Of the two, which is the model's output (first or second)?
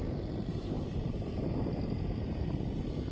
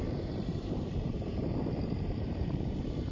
second